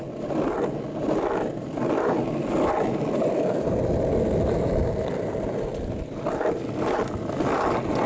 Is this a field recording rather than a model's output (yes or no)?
yes